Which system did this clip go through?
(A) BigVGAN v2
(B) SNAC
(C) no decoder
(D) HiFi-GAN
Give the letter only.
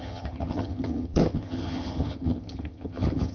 D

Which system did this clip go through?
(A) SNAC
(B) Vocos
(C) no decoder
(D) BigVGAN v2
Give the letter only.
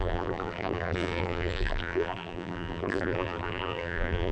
D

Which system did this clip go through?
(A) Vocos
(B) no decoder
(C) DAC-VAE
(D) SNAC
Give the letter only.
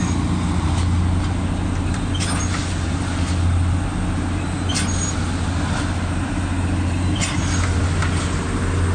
B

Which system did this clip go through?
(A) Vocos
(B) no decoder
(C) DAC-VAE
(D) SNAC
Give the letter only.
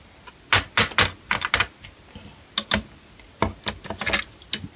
B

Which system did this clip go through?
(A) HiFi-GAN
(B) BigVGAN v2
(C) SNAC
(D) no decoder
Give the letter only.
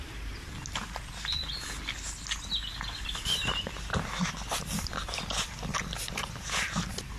D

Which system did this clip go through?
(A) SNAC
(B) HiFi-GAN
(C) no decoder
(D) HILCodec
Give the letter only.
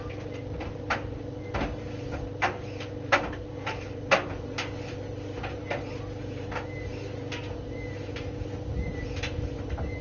C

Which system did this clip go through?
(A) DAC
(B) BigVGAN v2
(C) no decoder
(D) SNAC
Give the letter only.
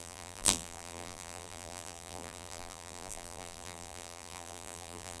B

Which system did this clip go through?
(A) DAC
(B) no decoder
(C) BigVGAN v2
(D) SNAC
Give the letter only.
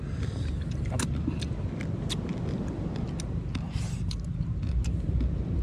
B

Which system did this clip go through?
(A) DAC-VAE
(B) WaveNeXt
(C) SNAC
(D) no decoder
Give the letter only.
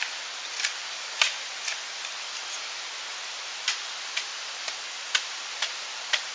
D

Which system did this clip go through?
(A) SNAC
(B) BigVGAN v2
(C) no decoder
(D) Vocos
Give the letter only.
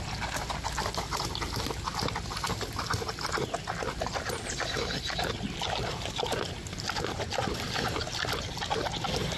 C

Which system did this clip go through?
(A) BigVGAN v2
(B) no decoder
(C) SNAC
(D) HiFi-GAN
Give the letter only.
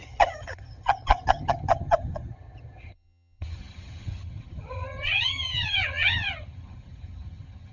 D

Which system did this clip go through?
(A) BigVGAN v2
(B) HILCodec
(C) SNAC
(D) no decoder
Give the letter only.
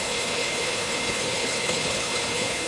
B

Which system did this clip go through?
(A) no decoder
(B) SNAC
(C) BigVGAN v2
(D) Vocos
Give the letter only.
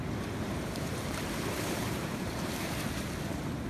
C